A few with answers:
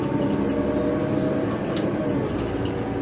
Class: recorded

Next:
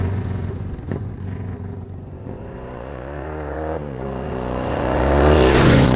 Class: remade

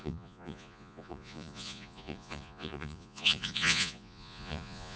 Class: remade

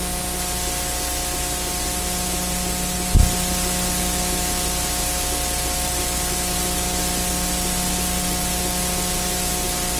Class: recorded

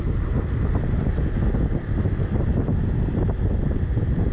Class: recorded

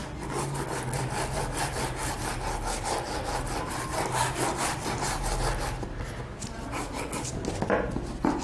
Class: recorded